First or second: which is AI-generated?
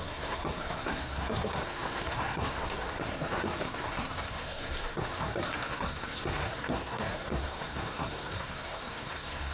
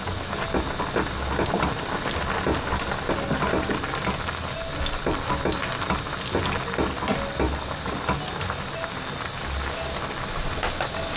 first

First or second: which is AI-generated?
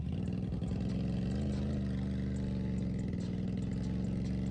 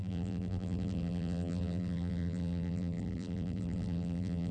second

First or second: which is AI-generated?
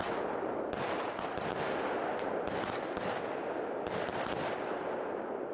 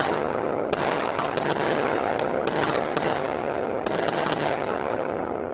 second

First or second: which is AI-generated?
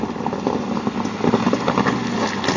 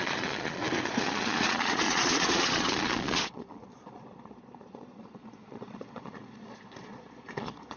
second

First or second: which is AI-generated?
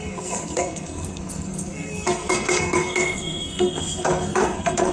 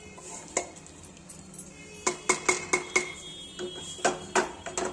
first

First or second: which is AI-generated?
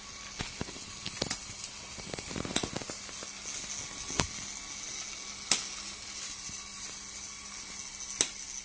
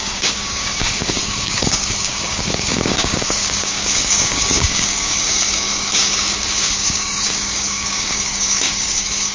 second